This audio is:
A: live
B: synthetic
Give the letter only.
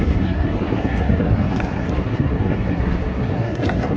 B